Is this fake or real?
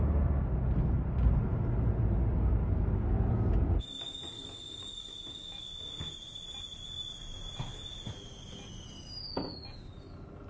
real